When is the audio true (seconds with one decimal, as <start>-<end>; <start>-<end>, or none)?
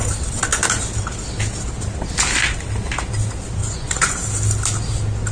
0.0-3.6; 4.2-5.3